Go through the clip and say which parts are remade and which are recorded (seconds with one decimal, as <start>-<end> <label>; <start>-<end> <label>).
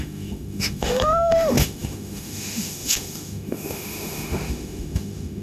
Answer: 0.0-5.4 remade